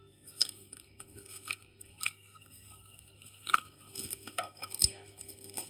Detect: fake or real fake